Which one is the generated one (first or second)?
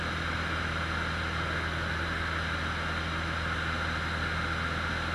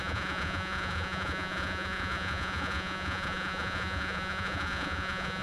second